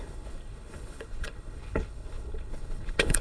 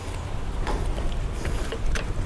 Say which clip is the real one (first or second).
second